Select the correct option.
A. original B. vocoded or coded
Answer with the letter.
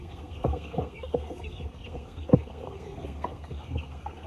B